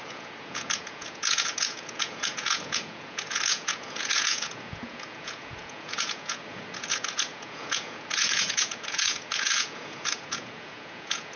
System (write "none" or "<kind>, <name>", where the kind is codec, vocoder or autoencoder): vocoder, Vocos